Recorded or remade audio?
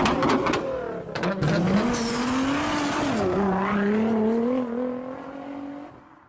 recorded